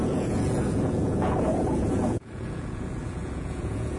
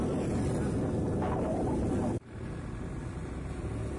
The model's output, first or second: first